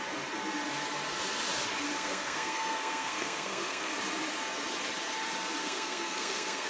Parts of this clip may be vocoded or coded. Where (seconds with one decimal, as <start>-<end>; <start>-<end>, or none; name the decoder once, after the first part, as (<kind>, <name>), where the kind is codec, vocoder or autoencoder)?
1.9-3.9 (codec, SNAC); 5.6-6.7